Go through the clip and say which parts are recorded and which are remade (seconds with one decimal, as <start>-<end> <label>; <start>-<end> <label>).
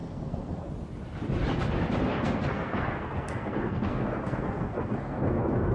0.0-0.7 remade; 0.7-2.1 recorded; 2.1-5.7 remade